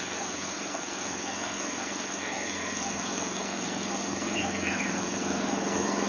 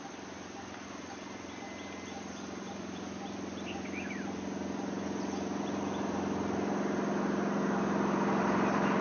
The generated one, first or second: first